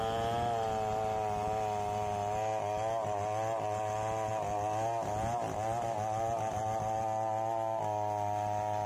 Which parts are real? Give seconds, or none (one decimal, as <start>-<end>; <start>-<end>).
0.0-8.9